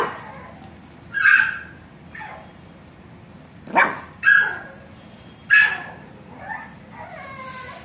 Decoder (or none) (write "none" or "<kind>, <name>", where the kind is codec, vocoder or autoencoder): none